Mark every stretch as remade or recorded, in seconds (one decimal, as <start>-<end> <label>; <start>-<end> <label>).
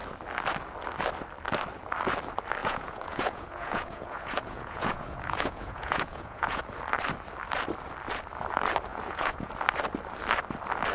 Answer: 0.0-2.6 recorded; 2.6-6.6 remade; 6.6-8.9 recorded; 8.9-9.5 remade; 9.5-10.9 recorded